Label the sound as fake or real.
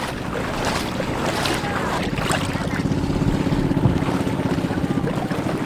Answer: real